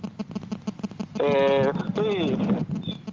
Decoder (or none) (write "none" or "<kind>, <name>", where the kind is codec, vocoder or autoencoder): none